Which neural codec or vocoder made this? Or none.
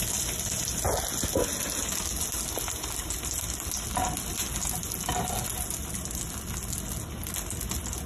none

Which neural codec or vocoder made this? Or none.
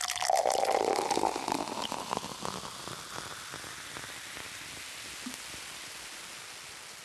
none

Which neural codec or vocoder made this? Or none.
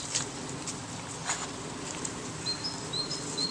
none